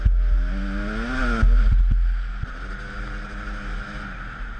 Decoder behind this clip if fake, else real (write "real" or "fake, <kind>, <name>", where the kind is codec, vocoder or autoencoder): real